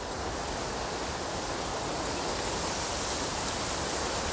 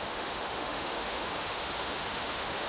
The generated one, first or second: second